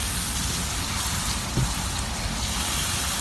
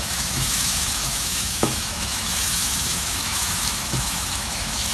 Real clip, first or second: first